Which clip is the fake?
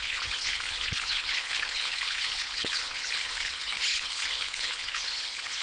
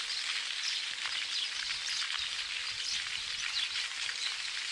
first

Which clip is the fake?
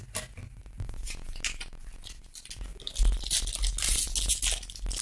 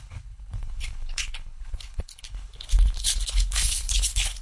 second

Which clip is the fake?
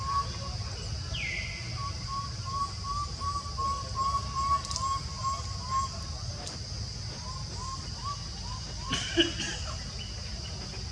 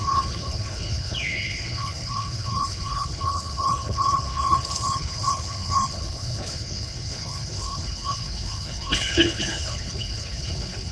second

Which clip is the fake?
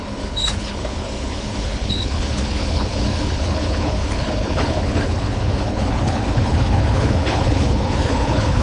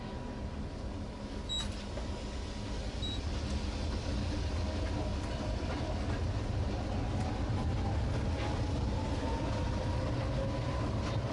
first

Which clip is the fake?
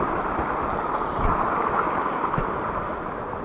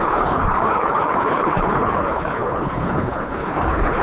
second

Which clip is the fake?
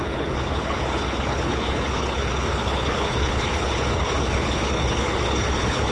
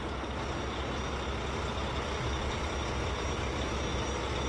first